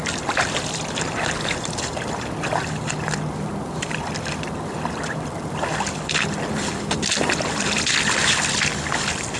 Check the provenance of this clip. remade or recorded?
recorded